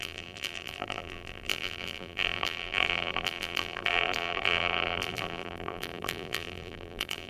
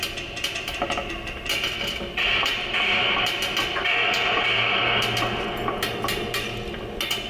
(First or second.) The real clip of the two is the second